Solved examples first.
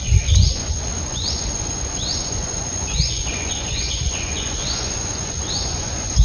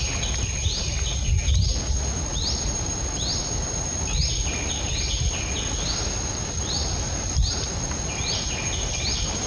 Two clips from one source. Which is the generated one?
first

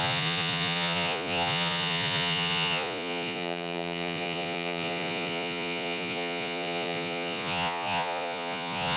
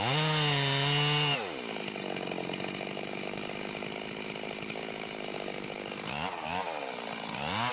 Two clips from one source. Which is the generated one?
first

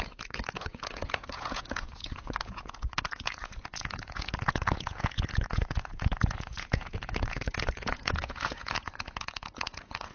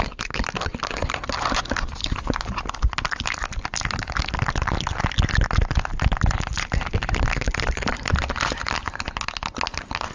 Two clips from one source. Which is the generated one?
first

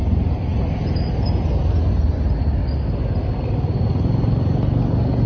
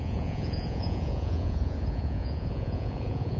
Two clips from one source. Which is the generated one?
second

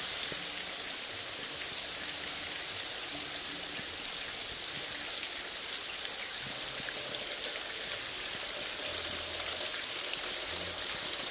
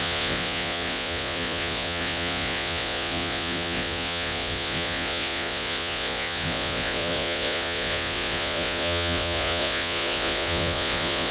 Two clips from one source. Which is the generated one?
second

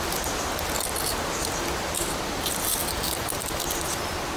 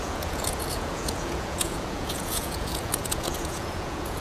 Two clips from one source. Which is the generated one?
second